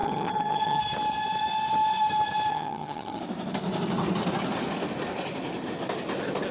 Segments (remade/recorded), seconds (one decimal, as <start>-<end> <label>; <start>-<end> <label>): 0.0-0.8 remade; 0.8-2.5 recorded; 2.5-3.2 remade; 3.2-6.5 recorded

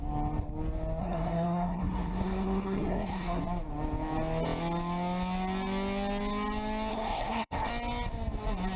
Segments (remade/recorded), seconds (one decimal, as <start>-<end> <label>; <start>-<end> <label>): 0.0-1.0 recorded; 1.0-3.4 remade; 3.4-6.9 recorded; 6.9-7.7 remade; 7.7-8.8 recorded

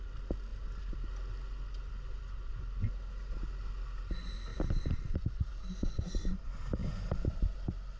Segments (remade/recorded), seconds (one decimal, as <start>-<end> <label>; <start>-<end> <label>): 0.0-8.0 recorded

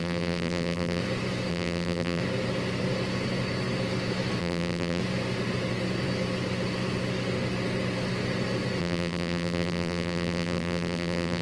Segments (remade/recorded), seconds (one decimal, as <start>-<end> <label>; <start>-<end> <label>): 0.0-1.0 remade; 1.0-1.5 recorded; 1.5-2.2 remade; 2.2-4.4 recorded; 4.4-5.0 remade; 5.0-8.8 recorded; 8.8-11.4 remade

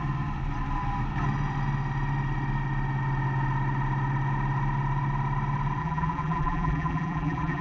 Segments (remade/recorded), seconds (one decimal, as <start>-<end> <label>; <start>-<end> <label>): 0.0-5.8 recorded; 5.8-7.6 remade

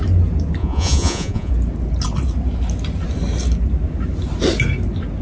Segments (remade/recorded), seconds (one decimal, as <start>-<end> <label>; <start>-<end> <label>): 0.0-0.6 recorded; 0.6-1.5 remade; 1.5-5.2 recorded

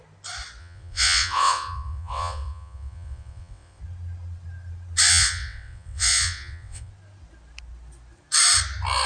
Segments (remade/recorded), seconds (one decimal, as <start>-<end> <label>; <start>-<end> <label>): 0.0-0.6 recorded; 0.6-3.8 remade; 3.8-5.1 recorded; 5.1-6.9 remade; 6.9-9.1 recorded